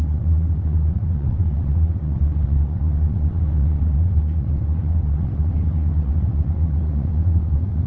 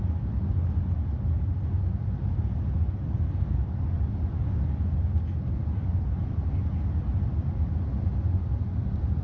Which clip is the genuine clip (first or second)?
second